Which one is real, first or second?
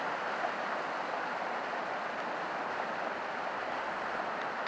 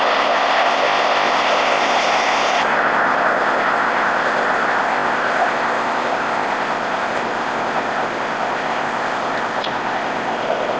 first